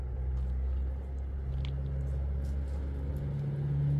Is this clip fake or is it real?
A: real